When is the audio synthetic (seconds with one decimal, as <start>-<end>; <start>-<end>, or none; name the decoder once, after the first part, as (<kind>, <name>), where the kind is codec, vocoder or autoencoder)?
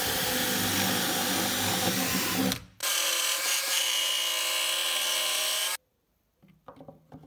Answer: 2.8-4.1 (vocoder, BigVGAN v2)